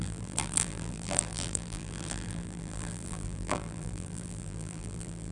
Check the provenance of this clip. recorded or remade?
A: remade